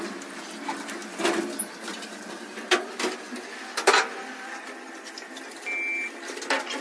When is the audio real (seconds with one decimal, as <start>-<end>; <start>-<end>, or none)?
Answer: 0.0-6.8